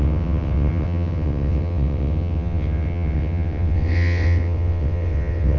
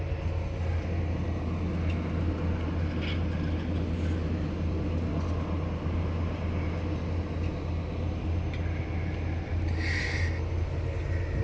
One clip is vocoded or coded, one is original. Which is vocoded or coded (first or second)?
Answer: first